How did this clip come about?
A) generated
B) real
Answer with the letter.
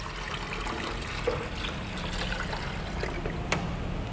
B